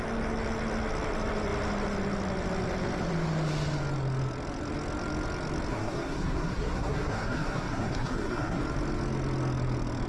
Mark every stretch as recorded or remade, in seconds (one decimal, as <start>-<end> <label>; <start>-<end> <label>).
0.0-5.7 recorded; 5.7-8.6 remade; 8.6-10.1 recorded

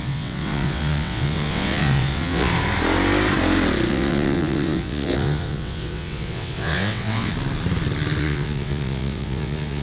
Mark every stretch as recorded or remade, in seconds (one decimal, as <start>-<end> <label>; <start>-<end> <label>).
0.0-2.5 remade; 2.5-3.9 recorded; 3.9-7.3 remade; 7.3-8.2 recorded; 8.2-9.8 remade

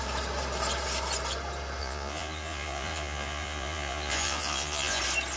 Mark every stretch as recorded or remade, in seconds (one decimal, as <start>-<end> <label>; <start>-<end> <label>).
0.0-1.8 recorded; 1.8-5.0 remade; 5.0-5.4 recorded

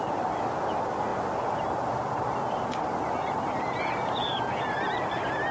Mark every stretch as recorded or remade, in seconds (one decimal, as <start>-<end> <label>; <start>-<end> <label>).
0.0-5.5 recorded

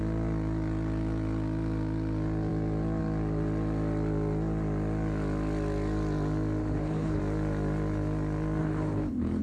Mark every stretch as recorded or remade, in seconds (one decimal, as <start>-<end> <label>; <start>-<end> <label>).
0.0-6.6 recorded; 6.6-7.2 remade; 7.2-8.6 recorded; 8.6-9.4 remade